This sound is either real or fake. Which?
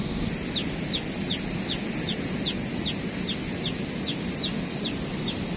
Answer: real